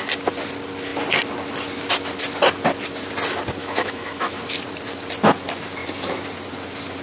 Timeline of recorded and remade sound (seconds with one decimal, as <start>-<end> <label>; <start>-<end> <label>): 0.0-3.6 recorded; 3.6-4.4 remade; 4.4-7.0 recorded